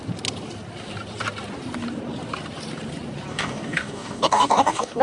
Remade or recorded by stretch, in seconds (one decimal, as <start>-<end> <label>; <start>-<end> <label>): 0.0-3.3 recorded; 3.3-5.0 remade